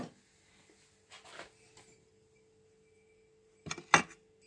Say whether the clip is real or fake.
real